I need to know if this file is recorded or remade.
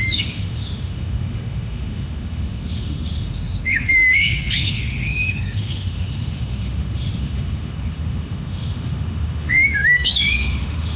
remade